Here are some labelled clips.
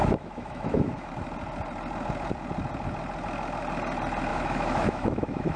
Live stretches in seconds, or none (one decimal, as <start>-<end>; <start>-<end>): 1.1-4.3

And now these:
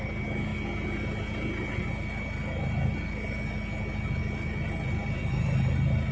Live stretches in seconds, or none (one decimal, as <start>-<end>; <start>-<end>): 0.0-6.1

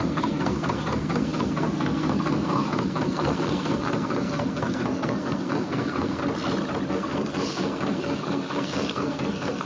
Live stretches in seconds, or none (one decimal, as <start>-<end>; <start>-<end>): 6.2-6.9

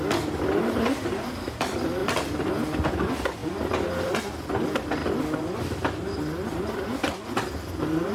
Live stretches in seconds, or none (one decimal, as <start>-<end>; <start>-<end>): 0.0-2.0; 2.5-3.4; 4.1-8.1

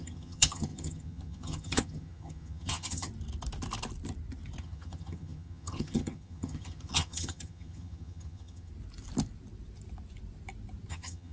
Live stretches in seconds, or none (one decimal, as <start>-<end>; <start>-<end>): 3.1-4.6; 8.7-10.9